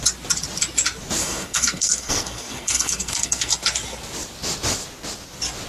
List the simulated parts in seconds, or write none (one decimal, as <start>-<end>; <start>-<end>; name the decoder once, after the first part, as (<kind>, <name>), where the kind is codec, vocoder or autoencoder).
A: 1.2-3.5 (codec, SNAC)